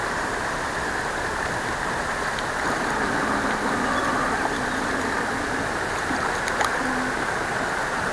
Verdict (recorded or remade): recorded